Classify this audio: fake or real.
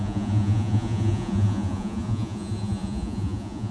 fake